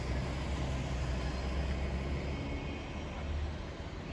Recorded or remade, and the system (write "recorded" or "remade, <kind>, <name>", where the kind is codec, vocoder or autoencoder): recorded